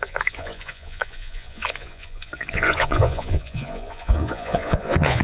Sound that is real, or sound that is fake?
fake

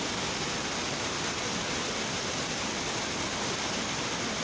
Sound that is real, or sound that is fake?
real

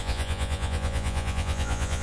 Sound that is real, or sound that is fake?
fake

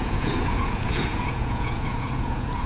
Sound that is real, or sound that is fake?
fake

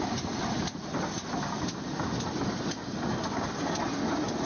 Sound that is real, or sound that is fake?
real